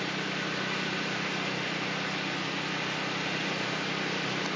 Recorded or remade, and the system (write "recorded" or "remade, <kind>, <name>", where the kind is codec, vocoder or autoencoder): recorded